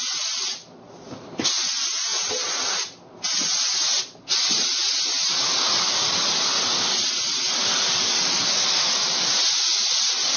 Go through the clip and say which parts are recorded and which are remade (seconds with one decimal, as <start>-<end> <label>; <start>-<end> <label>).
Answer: 0.0-10.4 recorded